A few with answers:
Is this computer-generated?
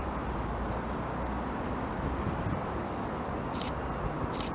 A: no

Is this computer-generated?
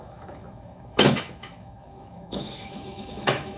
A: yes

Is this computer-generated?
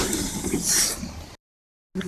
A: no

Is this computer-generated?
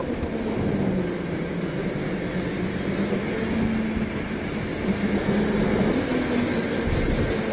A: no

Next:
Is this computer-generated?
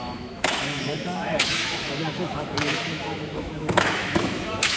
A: yes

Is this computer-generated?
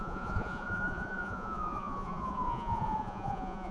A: yes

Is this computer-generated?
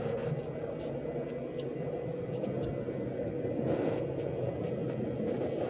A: no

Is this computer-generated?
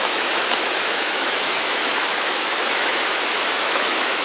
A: yes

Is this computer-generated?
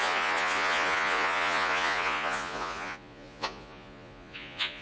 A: yes